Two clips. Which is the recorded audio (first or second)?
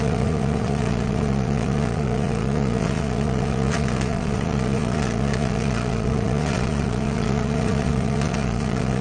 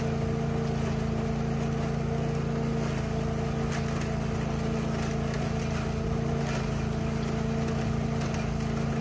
second